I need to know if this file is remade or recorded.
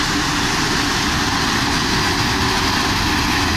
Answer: recorded